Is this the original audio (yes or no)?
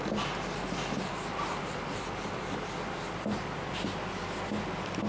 yes